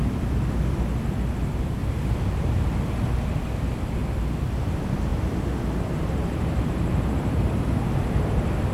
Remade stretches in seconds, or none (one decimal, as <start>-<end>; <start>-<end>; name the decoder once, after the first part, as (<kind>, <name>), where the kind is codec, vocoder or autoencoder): 5.1-7.9 (vocoder, BigVGAN v2)